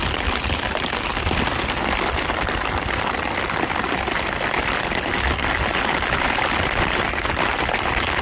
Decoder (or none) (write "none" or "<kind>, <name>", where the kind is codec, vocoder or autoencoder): none